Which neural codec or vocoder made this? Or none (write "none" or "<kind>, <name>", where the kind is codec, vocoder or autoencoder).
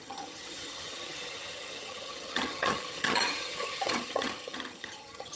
vocoder, HiFi-GAN